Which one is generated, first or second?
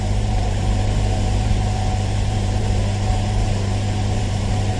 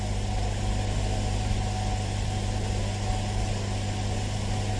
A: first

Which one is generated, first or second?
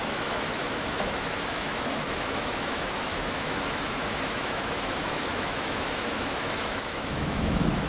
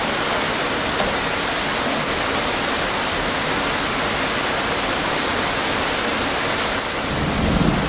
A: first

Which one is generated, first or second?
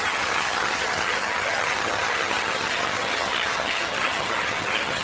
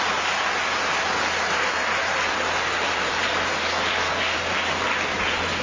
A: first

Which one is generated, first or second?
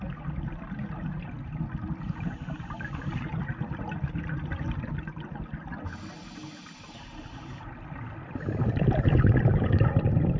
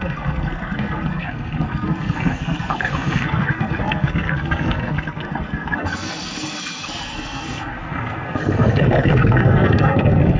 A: second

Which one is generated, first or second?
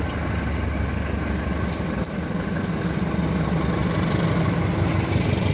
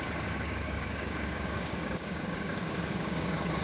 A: second